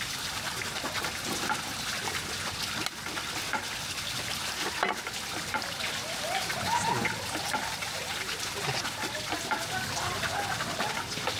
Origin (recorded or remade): recorded